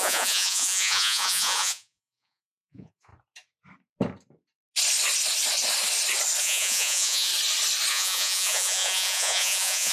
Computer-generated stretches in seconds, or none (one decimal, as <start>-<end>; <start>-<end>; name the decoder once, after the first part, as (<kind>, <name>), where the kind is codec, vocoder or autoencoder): 0.0-3.1 (vocoder, Vocos); 6.4-7.3; 7.9-9.9